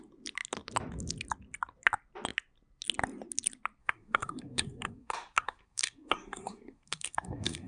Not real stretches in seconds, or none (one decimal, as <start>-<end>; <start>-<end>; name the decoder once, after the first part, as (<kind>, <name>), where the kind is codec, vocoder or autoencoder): 3.8-7.7 (codec, SNAC)